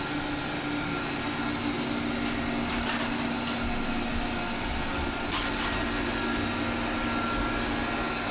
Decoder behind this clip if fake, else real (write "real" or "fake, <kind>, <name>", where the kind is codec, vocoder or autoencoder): real